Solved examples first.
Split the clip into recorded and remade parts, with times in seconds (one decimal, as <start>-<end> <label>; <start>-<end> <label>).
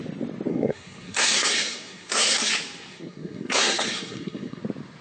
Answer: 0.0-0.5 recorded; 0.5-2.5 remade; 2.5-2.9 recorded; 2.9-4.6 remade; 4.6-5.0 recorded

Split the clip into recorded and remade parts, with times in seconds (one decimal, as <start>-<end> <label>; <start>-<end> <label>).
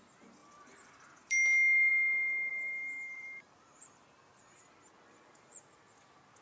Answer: 0.0-2.5 recorded; 2.5-4.6 remade; 4.6-6.4 recorded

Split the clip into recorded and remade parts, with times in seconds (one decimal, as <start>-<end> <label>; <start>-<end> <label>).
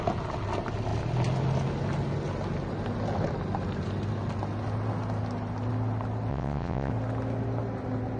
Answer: 0.0-6.3 recorded; 6.3-6.9 remade; 6.9-8.2 recorded